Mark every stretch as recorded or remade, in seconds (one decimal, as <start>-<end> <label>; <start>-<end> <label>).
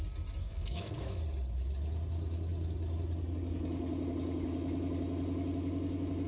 0.0-0.4 recorded; 0.4-1.2 remade; 1.2-6.3 recorded